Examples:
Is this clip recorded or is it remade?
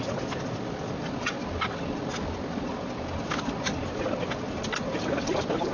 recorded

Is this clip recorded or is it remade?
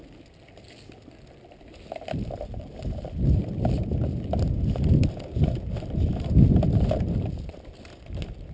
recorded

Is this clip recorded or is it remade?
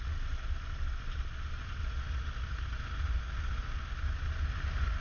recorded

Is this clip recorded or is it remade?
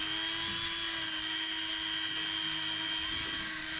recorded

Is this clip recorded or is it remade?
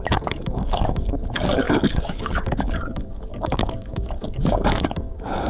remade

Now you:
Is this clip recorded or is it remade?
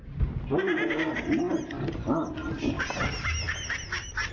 recorded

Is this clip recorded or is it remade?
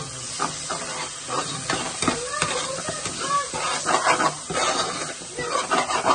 recorded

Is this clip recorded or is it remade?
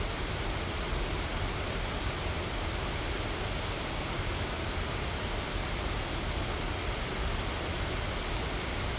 recorded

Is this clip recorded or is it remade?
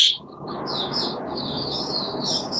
remade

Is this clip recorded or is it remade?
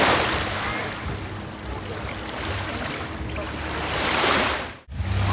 recorded